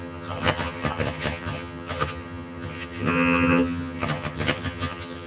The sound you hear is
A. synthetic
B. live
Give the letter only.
A